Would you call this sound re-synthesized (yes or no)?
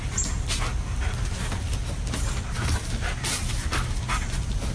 no